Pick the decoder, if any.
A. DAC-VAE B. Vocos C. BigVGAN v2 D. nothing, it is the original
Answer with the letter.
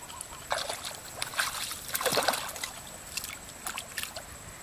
D